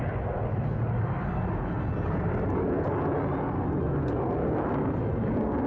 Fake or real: real